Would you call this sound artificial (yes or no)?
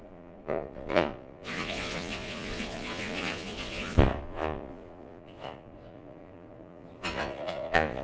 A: yes